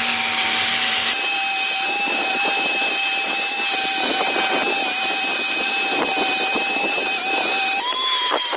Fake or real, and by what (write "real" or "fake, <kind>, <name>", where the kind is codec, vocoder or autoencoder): fake, vocoder, BigVGAN v2